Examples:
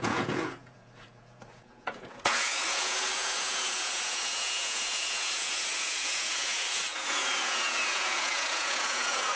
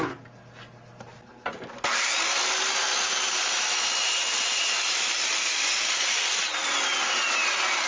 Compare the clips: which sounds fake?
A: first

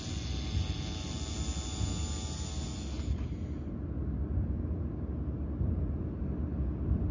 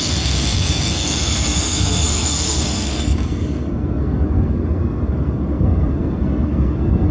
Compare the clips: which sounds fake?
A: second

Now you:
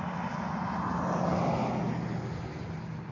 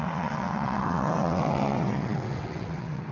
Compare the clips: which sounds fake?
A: second